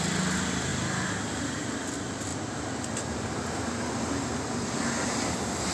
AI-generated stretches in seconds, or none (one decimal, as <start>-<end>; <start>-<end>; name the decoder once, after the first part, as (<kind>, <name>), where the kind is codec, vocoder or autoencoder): none